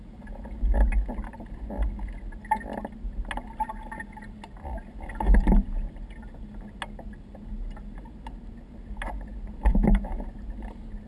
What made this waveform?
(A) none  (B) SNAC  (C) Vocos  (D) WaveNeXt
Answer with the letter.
A